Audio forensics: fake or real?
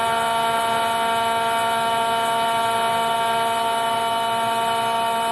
real